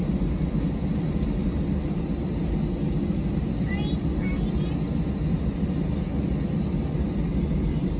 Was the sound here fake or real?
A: real